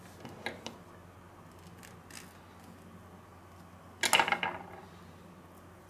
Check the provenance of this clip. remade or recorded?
recorded